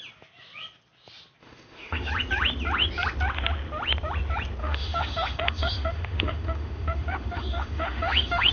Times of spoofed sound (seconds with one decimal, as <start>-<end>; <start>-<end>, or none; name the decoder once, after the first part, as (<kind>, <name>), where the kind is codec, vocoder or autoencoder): 1.4-2.1 (autoencoder, DAC-VAE); 4.6-8.5